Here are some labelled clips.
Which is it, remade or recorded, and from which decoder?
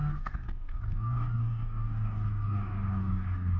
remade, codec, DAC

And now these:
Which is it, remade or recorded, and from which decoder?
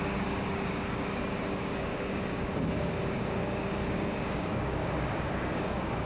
remade, codec, DAC